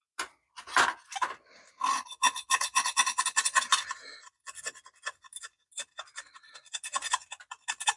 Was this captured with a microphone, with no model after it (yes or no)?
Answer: yes